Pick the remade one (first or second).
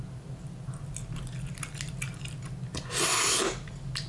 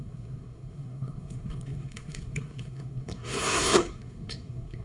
second